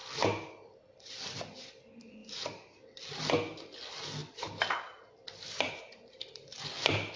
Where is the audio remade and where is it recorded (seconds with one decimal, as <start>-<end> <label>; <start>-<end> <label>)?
0.0-7.2 recorded